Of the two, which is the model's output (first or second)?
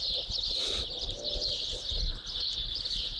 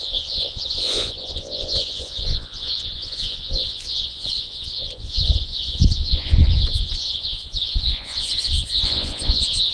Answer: second